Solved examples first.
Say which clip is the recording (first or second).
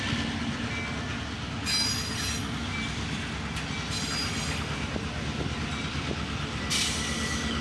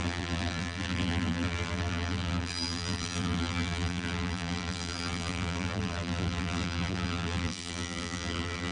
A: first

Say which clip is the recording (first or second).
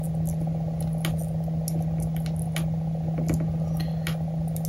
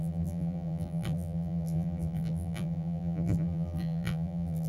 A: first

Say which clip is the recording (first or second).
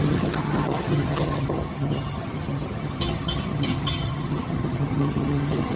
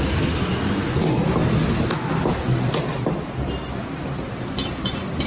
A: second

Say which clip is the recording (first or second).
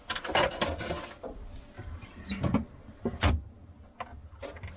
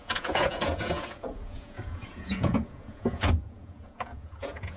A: first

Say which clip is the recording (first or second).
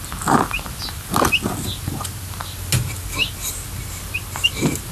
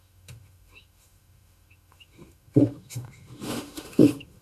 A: first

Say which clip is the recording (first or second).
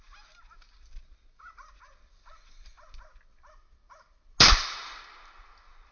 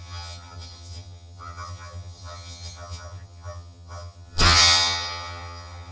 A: first